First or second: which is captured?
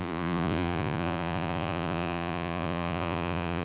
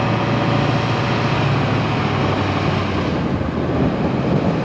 second